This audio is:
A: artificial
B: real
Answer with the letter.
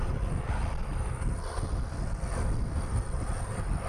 B